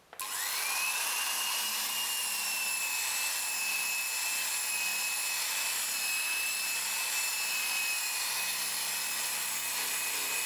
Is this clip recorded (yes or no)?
yes